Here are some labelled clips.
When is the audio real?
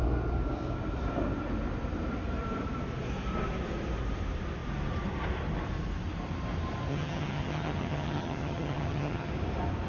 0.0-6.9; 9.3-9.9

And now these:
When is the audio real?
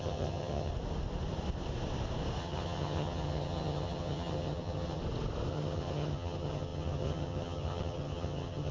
0.7-2.4; 5.0-5.5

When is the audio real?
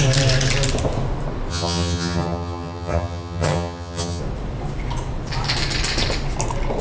0.0-1.5; 4.2-6.8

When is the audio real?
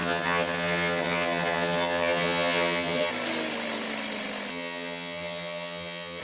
3.1-4.5